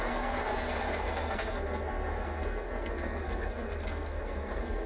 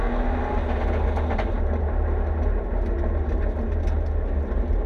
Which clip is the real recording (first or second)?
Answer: second